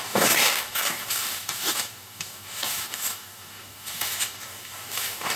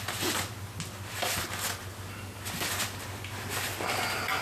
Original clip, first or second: second